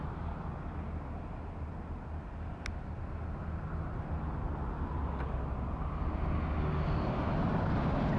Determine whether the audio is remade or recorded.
recorded